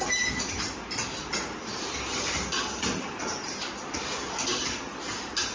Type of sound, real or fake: real